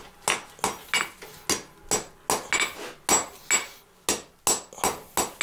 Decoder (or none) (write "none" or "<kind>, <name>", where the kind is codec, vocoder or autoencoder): none